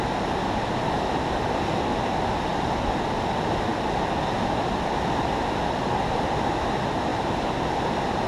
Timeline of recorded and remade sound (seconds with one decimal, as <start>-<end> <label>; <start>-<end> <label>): 0.0-2.5 recorded; 2.5-3.2 remade; 3.2-7.1 recorded; 7.1-8.3 remade